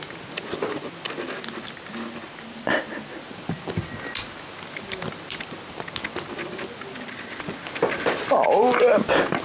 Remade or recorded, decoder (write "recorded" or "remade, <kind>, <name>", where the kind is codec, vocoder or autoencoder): recorded